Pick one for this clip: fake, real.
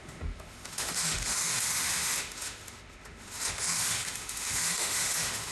fake